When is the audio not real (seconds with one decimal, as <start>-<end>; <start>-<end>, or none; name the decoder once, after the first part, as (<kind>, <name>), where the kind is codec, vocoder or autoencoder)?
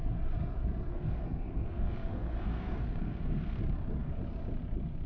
0.9-3.6 (codec, SNAC)